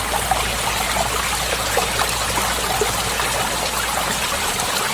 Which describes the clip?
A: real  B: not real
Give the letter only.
A